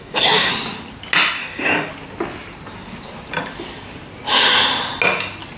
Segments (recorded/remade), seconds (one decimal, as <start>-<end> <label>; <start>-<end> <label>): 0.0-0.5 remade; 0.5-1.4 recorded; 1.4-1.9 remade; 1.9-5.6 recorded